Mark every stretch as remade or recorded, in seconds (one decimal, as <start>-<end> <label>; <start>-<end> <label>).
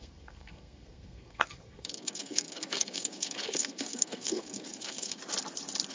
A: 0.0-5.2 remade; 5.2-5.9 recorded